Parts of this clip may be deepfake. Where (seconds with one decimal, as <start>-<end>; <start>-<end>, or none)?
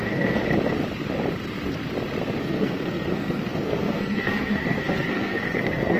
0.0-0.4; 2.4-6.0